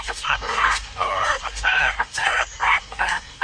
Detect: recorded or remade remade